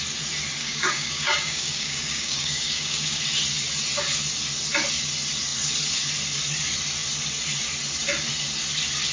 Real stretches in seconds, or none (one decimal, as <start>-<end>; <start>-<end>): 0.0-0.6; 3.2-9.1